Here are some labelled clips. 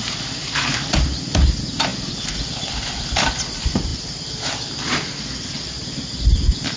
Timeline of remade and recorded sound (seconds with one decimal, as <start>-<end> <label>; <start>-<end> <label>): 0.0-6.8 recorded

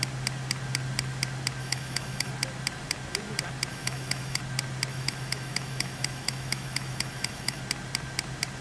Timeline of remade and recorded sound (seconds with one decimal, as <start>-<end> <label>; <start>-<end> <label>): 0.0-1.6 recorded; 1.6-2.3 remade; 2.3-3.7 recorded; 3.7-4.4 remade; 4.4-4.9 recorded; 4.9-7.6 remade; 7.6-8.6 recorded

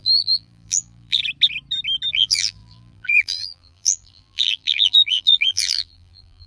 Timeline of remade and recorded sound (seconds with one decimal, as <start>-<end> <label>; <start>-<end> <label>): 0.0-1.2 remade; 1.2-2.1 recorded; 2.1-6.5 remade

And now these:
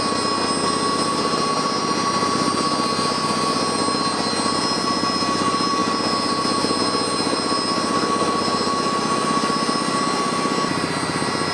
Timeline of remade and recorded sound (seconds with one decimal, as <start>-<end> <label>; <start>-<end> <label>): 0.0-11.5 recorded